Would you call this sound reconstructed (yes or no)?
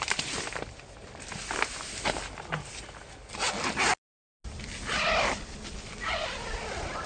no